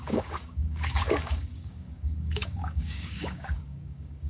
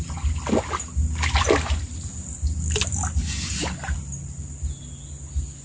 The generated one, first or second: first